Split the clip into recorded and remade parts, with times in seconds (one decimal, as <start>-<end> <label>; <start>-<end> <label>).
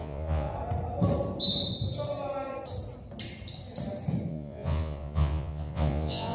0.0-0.5 remade; 0.5-4.3 recorded; 4.3-6.3 remade